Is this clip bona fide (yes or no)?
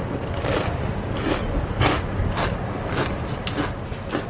yes